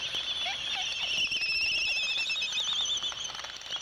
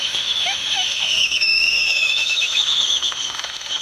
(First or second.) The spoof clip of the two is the second